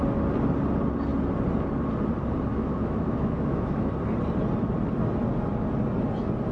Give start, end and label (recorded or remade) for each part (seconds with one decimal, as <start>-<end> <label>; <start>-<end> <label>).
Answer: 0.0-2.5 recorded; 2.5-3.9 remade; 3.9-6.5 recorded